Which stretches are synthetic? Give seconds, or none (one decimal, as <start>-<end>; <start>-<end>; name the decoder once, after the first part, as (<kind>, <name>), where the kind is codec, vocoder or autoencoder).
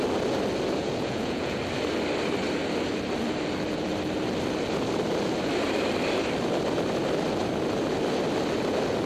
0.8-1.6 (vocoder, Vocos)